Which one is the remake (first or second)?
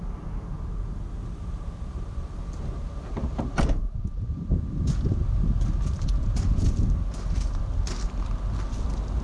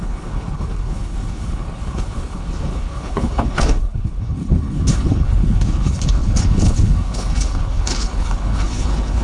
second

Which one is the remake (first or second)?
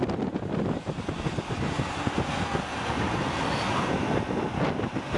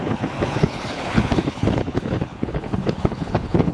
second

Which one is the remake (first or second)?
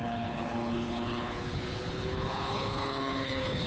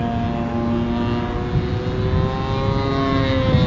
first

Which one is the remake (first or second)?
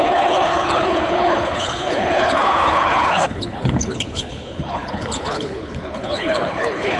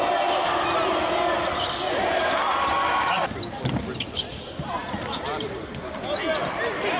first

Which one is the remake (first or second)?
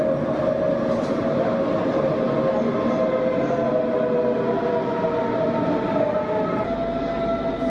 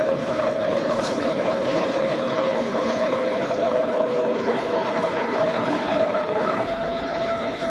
second